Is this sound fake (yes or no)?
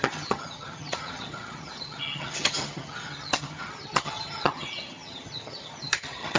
yes